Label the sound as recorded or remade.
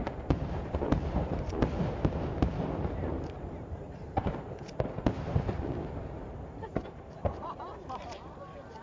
remade